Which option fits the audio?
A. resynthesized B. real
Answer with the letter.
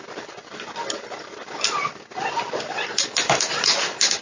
B